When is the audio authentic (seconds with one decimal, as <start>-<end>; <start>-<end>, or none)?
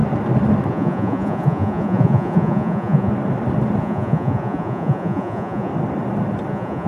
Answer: 0.0-0.7; 3.1-3.8; 5.7-6.5